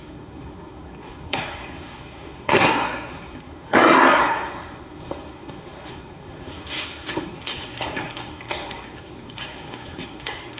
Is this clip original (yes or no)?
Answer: no